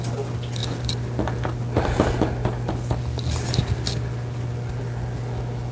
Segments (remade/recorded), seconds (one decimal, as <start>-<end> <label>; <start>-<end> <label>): 0.0-5.7 recorded